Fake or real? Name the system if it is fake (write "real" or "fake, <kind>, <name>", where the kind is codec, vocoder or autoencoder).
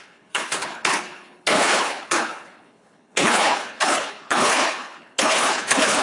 fake, codec, HILCodec